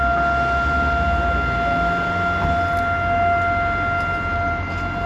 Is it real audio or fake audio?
real